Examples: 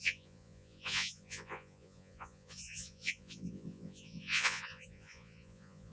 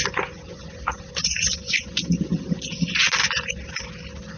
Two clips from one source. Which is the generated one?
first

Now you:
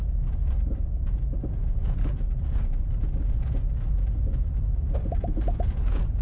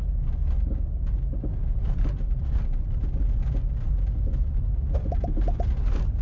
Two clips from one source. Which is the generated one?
first